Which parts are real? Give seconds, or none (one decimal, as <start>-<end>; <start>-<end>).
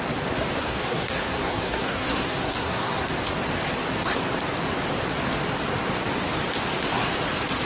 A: 0.0-0.6; 3.0-7.7